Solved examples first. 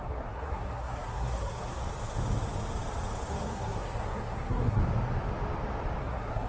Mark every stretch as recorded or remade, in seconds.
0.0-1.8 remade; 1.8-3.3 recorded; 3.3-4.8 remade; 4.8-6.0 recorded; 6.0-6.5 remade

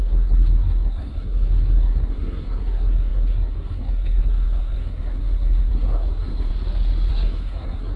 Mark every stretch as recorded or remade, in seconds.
0.0-6.5 remade; 6.5-7.1 recorded; 7.1-8.0 remade